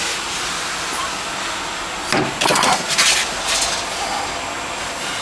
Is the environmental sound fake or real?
real